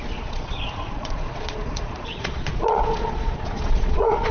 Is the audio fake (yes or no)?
yes